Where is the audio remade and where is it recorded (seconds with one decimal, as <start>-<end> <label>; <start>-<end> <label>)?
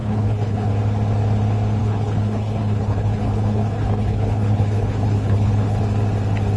0.0-0.7 remade; 0.7-1.8 recorded; 1.8-5.8 remade; 5.8-6.6 recorded